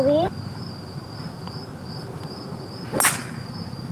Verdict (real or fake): real